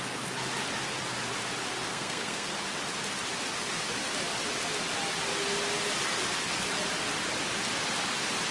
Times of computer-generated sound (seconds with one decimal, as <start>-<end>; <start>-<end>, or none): 1.9-2.5